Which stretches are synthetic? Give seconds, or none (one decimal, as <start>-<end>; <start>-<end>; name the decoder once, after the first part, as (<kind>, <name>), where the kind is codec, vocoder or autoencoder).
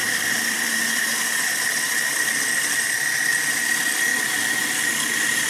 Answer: 0.0-4.1 (vocoder, BigVGAN v2)